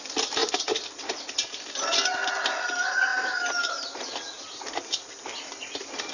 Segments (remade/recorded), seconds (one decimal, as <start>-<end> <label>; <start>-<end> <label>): 0.0-6.1 recorded